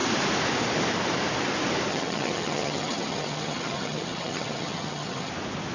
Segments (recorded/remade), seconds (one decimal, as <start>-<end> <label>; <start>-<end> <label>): 0.0-1.9 recorded; 1.9-5.3 remade; 5.3-5.7 recorded